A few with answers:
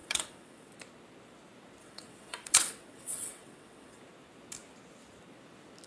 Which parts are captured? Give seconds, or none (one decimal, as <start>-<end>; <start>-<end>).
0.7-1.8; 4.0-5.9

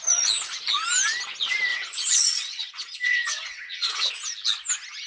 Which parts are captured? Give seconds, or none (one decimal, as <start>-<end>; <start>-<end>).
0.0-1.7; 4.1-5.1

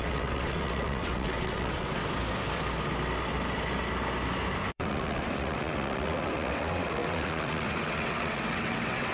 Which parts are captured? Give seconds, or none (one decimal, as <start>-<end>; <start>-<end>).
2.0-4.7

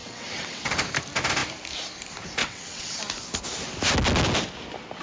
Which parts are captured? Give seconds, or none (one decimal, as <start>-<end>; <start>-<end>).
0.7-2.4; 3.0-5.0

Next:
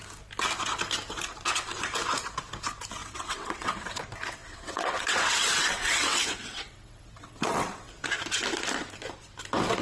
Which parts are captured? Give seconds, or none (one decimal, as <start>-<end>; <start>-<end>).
0.0-3.0; 4.0-4.4; 7.9-9.8

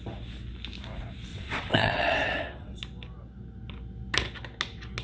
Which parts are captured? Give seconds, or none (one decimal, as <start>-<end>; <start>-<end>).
0.0-1.3; 2.8-5.0

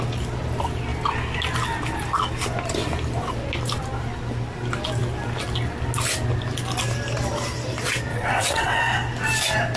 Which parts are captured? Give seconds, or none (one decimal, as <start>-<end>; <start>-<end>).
0.0-8.1; 8.8-9.8

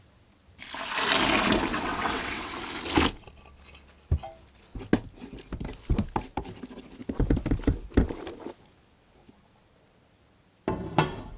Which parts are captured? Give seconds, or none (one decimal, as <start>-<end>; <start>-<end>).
0.0-1.7; 2.5-11.4